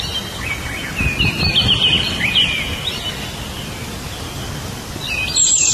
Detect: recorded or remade recorded